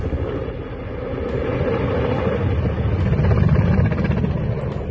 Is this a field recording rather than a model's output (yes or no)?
yes